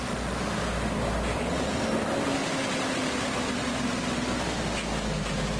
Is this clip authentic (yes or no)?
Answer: yes